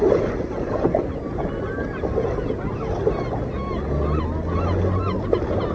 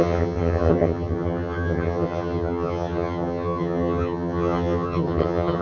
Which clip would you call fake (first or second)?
second